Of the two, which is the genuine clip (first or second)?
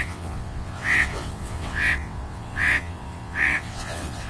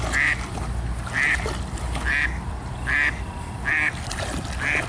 second